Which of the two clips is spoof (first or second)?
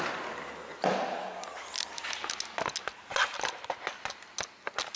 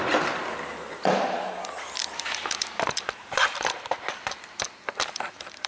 second